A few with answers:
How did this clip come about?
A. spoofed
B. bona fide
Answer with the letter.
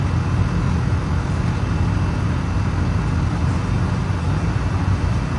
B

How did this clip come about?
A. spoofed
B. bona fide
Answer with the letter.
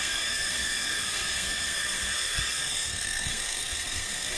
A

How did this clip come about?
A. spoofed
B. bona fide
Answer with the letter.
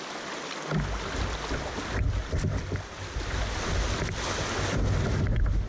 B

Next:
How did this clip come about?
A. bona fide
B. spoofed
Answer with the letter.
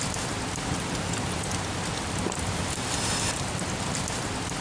A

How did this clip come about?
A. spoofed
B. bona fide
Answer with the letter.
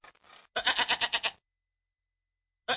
B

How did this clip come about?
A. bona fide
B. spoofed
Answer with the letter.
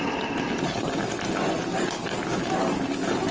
A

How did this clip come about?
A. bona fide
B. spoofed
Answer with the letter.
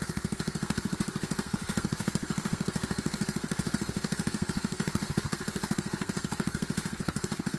B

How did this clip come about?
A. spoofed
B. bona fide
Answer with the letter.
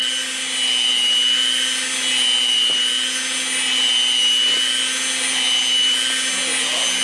B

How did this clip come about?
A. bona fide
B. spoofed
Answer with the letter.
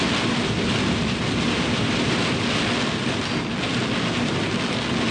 A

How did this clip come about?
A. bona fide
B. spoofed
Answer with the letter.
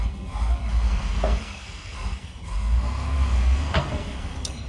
B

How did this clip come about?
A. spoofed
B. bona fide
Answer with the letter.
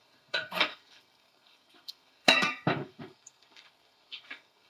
A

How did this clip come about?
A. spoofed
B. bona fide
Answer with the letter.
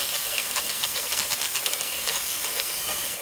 A